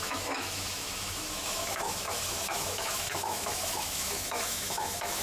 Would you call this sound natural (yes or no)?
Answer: no